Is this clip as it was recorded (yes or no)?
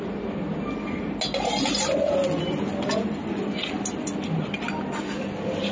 yes